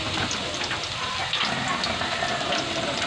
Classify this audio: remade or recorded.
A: recorded